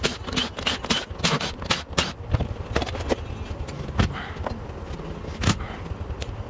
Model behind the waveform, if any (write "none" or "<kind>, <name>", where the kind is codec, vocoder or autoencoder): none